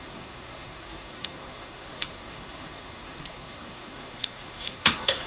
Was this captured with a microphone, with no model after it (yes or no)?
no